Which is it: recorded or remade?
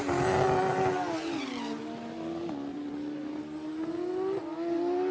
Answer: recorded